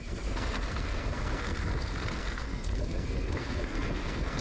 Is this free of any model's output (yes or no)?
no